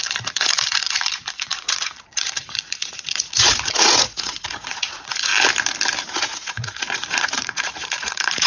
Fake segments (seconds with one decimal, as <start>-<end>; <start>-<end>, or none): 0.0-5.3; 6.1-8.5